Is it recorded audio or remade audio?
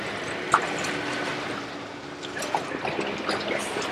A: recorded